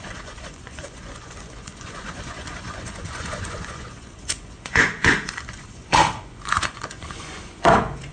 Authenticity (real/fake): fake